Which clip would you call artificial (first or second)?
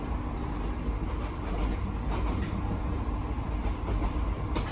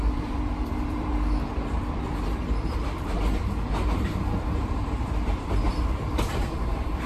second